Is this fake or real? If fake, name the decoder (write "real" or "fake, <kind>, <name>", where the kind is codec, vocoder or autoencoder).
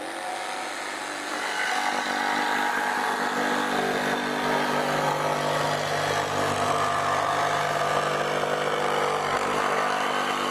real